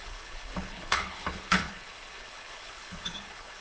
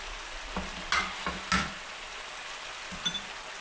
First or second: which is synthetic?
first